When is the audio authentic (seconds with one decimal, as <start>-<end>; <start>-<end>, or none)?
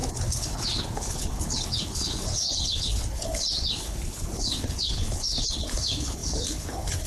none